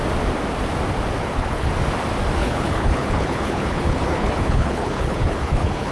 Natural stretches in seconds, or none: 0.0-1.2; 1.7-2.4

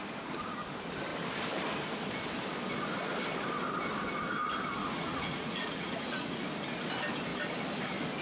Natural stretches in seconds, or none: 0.0-4.8; 6.4-8.2

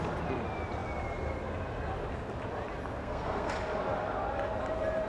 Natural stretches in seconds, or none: 0.0-3.0; 3.5-5.1

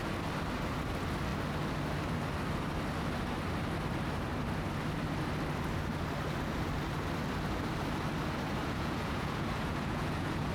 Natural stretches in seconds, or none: 0.0-8.6

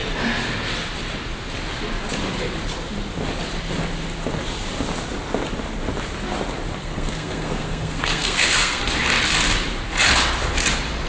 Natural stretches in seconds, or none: 0.0-6.8; 8.8-11.1

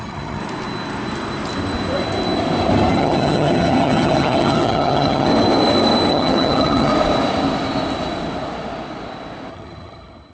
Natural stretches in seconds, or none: 0.4-2.9; 5.3-6.1; 6.9-9.5